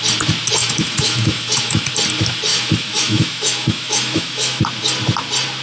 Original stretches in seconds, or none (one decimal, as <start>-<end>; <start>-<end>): 0.0-0.6; 1.8-2.5; 4.6-5.6